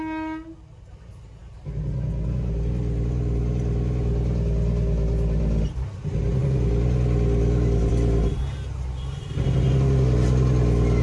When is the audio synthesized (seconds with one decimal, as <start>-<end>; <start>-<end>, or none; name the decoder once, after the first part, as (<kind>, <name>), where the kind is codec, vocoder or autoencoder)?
none